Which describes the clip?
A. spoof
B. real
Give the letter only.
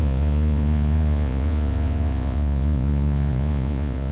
A